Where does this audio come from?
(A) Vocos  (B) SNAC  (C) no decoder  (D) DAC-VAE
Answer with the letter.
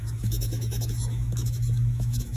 D